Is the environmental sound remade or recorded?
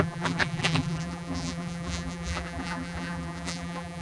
remade